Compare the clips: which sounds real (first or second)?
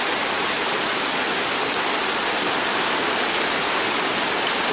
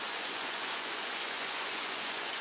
first